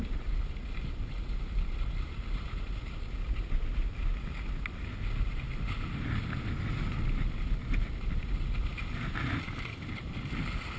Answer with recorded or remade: recorded